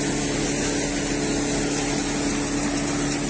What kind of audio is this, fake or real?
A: real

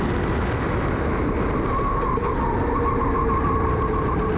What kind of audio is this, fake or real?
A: real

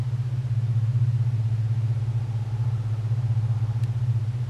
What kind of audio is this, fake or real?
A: real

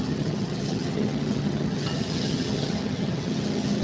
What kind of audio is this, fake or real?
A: fake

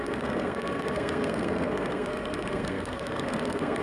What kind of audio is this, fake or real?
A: fake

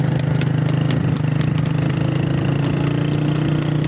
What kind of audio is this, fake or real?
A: real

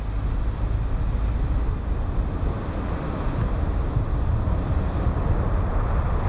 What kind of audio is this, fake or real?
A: real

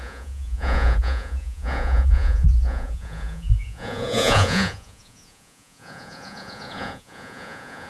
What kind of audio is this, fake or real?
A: fake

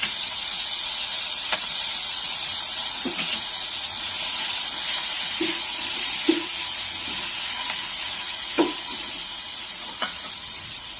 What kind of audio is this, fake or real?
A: fake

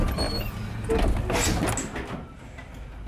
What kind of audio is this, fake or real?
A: real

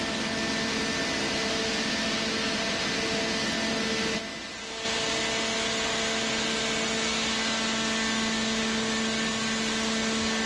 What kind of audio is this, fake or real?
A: real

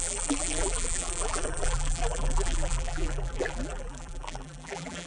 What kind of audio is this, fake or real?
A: fake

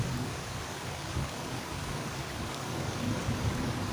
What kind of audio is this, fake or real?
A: fake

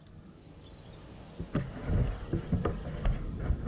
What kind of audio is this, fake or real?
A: real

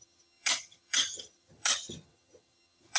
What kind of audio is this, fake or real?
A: fake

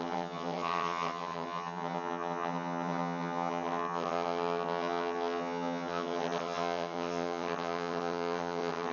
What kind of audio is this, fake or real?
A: fake